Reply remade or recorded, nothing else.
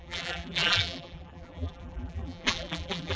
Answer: remade